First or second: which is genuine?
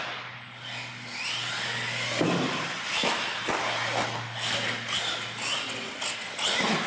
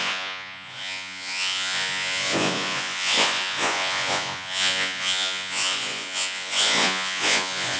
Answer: first